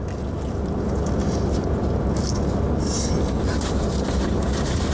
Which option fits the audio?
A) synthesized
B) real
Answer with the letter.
B